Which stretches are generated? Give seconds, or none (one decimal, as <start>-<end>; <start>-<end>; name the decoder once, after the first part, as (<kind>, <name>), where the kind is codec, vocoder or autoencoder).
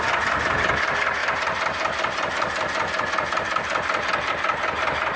none